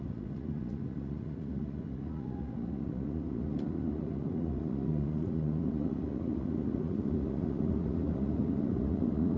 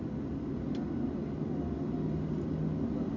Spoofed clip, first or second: first